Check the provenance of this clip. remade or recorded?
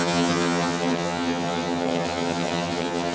remade